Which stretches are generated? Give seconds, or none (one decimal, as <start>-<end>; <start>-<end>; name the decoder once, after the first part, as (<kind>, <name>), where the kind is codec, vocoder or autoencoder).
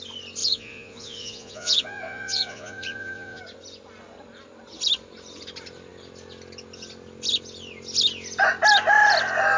0.4-3.4 (vocoder, Vocos)